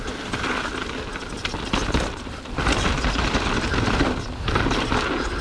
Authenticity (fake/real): real